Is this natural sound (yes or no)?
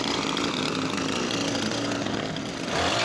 yes